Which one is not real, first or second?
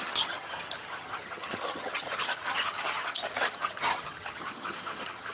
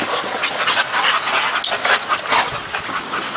first